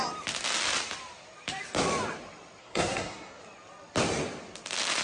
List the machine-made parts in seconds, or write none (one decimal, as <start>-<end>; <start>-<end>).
2.6-3.4